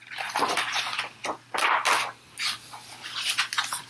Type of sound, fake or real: real